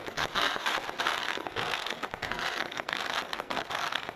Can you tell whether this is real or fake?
fake